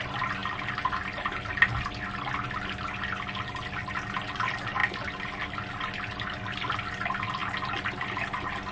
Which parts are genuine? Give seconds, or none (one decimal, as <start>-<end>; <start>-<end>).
0.0-8.7